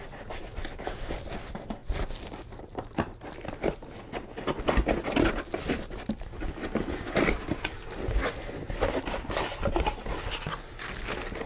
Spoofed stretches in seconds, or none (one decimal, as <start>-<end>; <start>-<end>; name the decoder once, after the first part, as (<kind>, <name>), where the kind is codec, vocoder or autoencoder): none